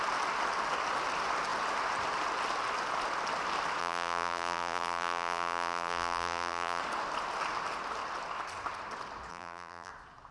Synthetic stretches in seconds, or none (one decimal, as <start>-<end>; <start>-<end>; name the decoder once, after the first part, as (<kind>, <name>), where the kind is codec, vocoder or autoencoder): 3.8-6.8 (vocoder, BigVGAN v2); 9.3-9.9